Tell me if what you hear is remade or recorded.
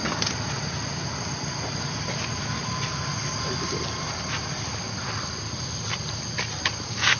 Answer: recorded